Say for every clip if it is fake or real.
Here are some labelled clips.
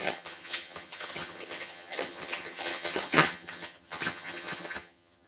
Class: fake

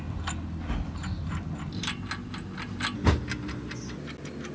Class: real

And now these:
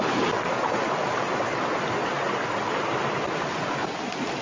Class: real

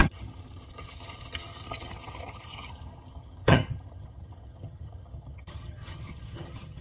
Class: fake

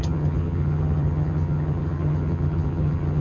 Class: fake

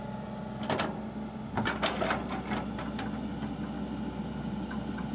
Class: real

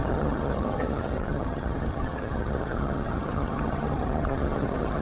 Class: fake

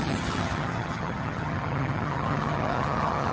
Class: fake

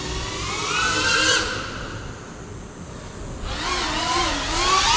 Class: real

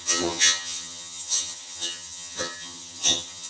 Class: fake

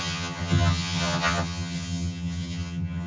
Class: fake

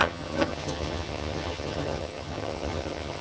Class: fake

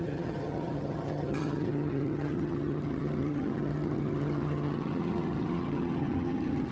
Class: fake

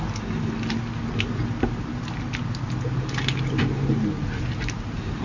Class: real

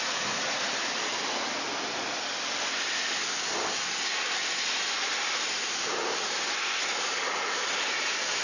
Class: real